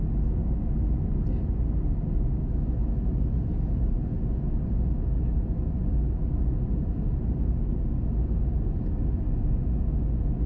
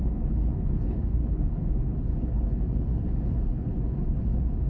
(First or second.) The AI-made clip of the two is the second